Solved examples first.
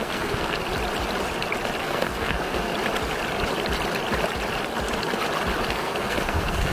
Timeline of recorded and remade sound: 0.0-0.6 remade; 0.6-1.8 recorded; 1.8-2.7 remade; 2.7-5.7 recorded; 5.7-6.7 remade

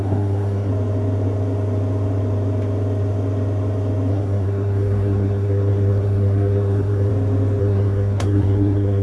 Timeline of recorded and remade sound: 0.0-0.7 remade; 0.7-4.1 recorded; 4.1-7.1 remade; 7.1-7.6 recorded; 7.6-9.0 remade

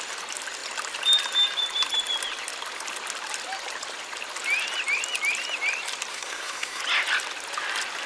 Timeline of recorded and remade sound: 0.0-6.1 recorded; 6.1-6.8 remade; 6.8-8.1 recorded

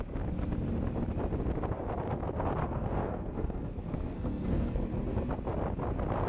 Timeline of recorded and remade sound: 0.0-2.6 recorded; 2.6-5.3 remade; 5.3-6.3 recorded

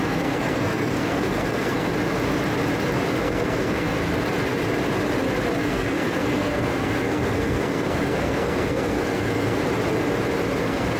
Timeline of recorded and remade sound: 0.0-1.9 remade; 1.9-3.2 recorded; 3.2-4.0 remade; 4.0-5.6 recorded; 5.6-9.6 remade; 9.6-10.6 recorded; 10.6-11.0 remade

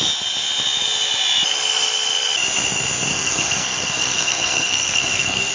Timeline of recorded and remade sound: 0.0-3.1 recorded; 3.1-5.5 remade

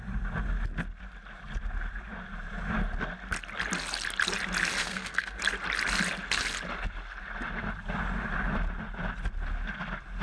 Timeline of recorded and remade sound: 0.0-4.8 recorded; 4.8-5.4 remade; 5.4-10.2 recorded